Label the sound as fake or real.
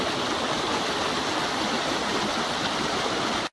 real